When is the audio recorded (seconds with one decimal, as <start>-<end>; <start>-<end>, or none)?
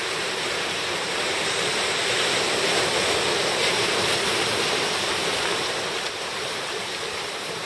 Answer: none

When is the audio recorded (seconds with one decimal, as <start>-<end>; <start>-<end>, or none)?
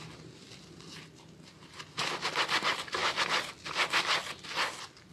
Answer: 0.0-5.1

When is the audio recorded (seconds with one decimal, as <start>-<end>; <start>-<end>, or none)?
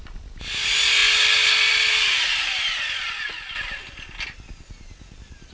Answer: 0.0-5.5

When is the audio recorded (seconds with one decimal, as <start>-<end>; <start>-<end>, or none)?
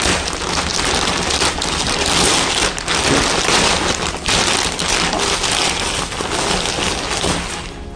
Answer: 0.0-8.0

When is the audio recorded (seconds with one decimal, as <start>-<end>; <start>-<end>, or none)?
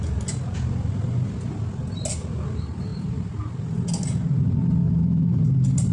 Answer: 0.0-4.8; 5.4-5.9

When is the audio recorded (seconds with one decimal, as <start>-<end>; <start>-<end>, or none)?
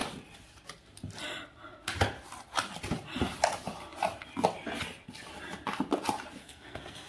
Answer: 0.0-6.4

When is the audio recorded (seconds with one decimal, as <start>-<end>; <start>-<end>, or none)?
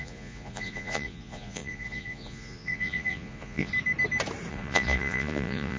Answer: 3.7-4.5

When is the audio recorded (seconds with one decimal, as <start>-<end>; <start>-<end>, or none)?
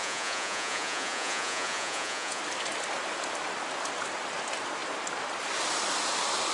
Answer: 2.4-6.5